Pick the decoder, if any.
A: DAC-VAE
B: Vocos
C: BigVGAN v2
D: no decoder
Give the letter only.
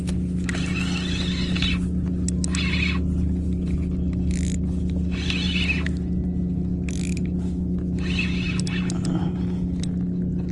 D